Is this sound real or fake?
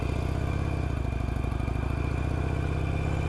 real